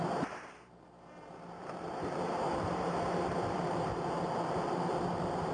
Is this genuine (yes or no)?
no